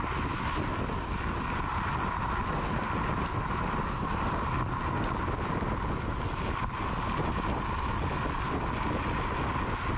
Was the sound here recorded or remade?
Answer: recorded